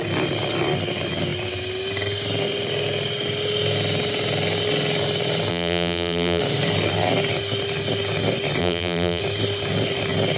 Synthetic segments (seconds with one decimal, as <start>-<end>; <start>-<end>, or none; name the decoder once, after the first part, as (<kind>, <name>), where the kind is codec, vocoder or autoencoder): 5.5-6.4 (vocoder, BigVGAN v2); 8.6-9.2